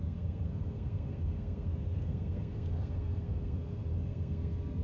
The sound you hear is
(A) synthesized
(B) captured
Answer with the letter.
A